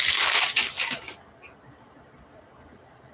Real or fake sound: real